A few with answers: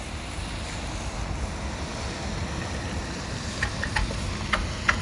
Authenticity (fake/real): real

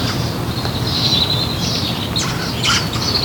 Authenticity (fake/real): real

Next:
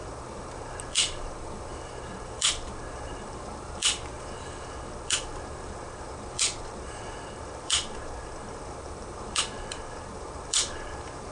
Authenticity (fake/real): fake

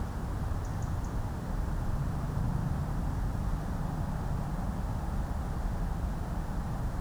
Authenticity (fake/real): real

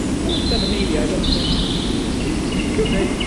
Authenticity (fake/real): real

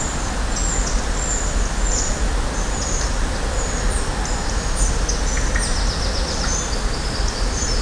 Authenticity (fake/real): real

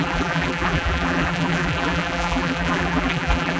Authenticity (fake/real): fake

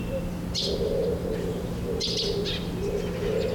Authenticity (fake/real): real